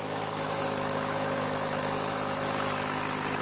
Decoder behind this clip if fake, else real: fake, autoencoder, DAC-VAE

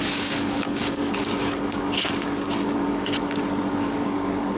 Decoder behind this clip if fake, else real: fake, codec, DAC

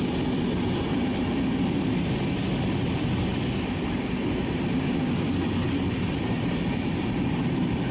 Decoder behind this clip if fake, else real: real